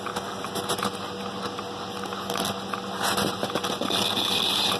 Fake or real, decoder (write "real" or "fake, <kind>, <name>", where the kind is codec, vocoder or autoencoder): real